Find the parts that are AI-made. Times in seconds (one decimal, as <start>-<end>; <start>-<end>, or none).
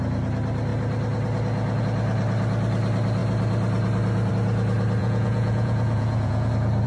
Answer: 5.0-6.5